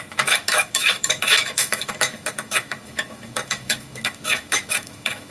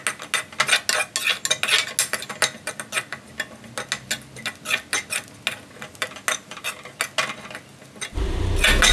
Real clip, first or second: second